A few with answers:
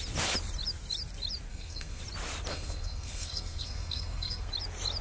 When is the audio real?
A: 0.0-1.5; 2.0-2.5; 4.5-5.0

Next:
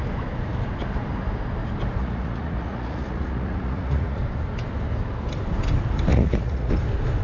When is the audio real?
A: 0.0-2.0; 4.2-6.1; 6.7-7.2

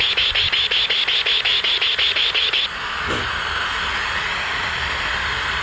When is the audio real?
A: 0.0-1.5; 2.7-5.6